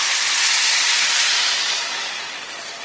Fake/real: real